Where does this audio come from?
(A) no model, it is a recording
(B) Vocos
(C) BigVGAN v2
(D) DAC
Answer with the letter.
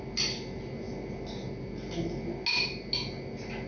A